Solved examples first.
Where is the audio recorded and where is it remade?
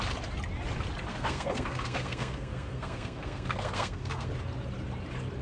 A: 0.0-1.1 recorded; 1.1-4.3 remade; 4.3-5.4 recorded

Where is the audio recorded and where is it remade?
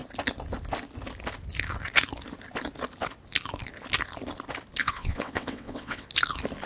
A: 0.0-4.8 recorded; 4.8-6.1 remade; 6.1-6.7 recorded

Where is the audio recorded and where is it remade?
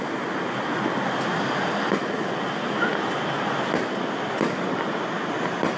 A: 0.0-5.8 recorded